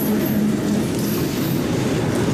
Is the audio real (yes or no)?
yes